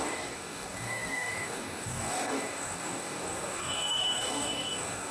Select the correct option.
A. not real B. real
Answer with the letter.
A